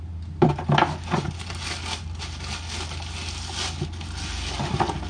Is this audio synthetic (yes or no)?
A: no